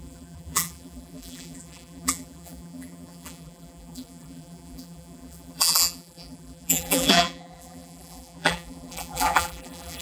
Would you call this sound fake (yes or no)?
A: yes